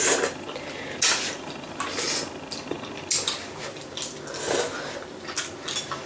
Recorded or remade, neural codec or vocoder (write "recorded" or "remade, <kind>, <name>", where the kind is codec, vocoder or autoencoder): recorded